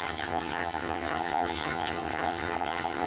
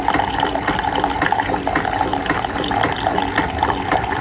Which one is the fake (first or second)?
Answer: first